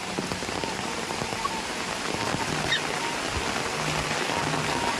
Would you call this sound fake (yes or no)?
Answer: no